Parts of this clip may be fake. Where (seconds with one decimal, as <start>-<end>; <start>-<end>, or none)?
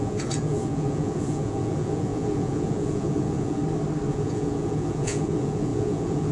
0.0-3.6; 4.1-6.3